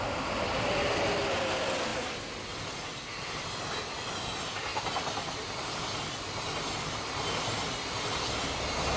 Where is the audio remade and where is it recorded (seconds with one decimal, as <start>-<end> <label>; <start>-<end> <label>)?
0.0-9.0 recorded